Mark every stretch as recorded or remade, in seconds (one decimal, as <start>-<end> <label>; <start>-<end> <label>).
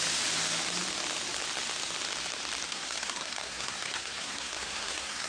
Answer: 0.0-2.7 recorded; 2.7-5.3 remade